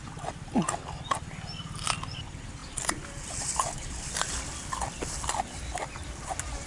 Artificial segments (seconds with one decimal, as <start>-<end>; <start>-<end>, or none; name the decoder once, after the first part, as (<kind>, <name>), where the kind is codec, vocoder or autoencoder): none